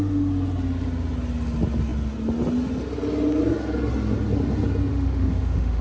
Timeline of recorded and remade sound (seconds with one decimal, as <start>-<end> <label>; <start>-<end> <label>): 0.0-4.9 recorded; 4.9-5.8 remade